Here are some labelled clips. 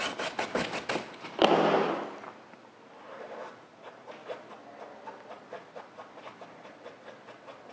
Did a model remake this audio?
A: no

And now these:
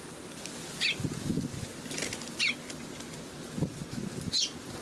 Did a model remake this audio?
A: no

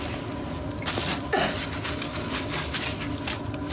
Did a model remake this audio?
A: no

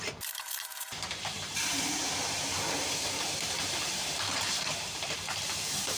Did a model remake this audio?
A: yes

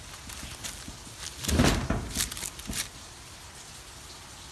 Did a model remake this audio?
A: no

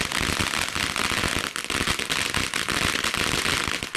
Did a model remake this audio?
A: no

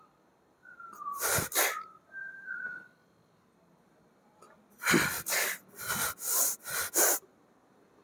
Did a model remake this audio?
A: no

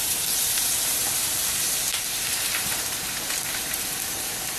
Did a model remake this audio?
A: yes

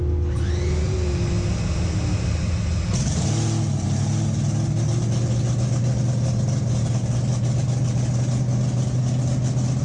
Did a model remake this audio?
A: no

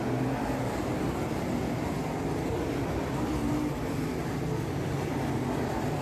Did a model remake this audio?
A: yes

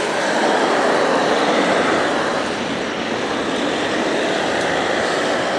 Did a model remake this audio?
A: yes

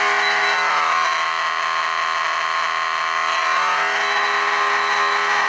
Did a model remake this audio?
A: no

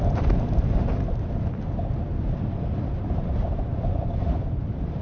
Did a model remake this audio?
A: no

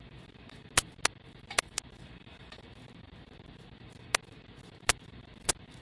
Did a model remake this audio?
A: no